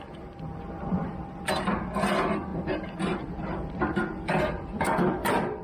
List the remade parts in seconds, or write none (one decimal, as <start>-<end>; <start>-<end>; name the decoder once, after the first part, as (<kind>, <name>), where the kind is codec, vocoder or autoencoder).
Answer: 2.5-4.0 (vocoder, BigVGAN v2)